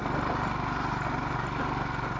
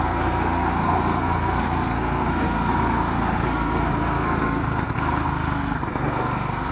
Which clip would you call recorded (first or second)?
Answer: first